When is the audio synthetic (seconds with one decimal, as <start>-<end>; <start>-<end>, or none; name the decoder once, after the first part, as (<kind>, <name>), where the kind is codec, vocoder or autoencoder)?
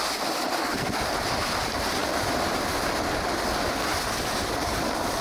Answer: 0.6-1.1 (codec, SNAC)